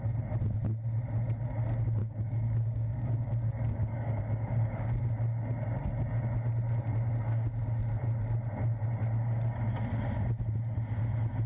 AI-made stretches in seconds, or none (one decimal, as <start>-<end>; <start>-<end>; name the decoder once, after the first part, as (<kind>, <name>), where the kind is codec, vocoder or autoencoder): 2.0-5.0 (codec, DAC)